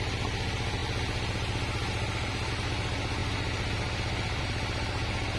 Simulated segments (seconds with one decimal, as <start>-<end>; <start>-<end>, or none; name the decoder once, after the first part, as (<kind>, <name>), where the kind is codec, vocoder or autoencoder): none